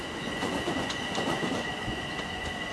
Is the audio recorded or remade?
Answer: remade